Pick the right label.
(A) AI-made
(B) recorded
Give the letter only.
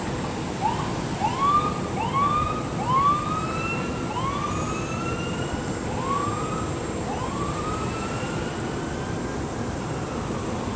B